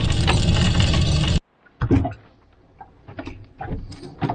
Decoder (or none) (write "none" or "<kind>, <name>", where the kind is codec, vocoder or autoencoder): none